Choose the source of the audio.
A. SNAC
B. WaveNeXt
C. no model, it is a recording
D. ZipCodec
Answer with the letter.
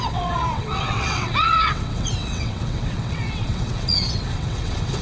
B